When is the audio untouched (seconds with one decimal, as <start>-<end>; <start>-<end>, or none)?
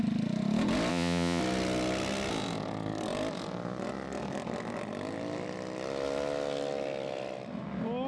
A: 0.0-0.9; 1.4-8.1